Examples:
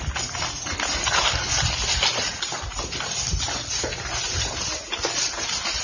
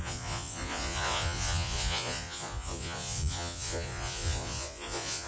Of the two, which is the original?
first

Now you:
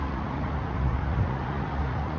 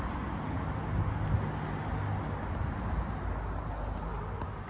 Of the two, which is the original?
second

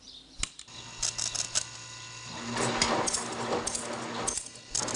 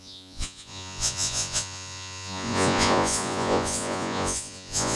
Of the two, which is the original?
first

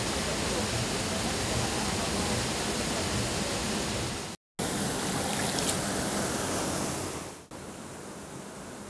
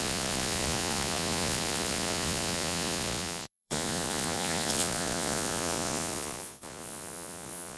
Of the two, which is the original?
first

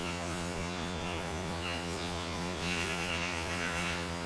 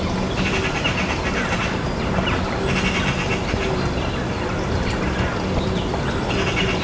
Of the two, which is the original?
second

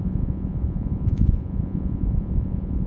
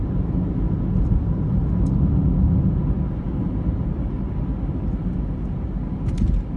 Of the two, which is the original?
second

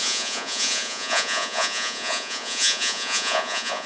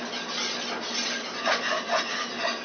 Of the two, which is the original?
second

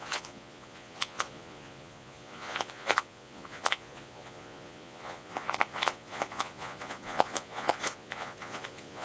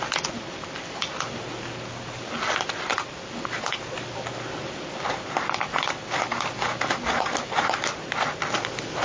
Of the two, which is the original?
second